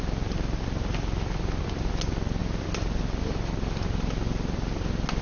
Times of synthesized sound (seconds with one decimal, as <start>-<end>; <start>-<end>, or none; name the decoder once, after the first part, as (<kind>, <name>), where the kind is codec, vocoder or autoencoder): none